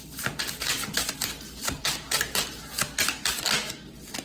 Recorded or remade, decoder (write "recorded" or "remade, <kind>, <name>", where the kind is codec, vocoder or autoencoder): recorded